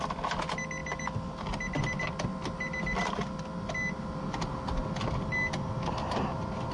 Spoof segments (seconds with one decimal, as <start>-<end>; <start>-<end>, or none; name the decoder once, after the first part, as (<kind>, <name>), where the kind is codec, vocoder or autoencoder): none